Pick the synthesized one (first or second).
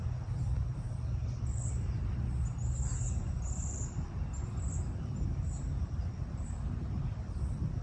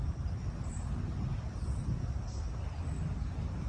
first